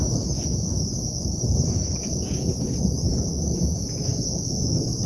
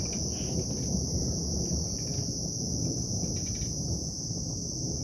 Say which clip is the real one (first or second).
second